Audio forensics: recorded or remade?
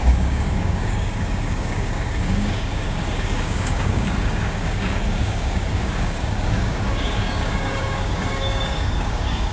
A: remade